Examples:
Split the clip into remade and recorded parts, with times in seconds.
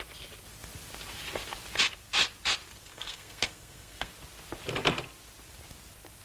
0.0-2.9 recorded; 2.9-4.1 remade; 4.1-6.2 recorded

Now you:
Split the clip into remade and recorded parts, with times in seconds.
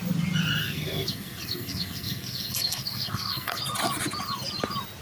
0.0-0.6 recorded; 0.6-3.6 remade; 3.6-5.0 recorded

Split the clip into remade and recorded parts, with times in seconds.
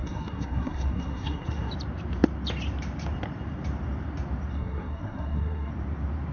0.0-1.7 remade; 1.7-4.5 recorded; 4.5-5.7 remade; 5.7-6.3 recorded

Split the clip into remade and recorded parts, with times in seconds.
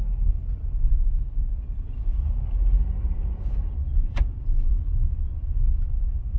0.0-6.4 recorded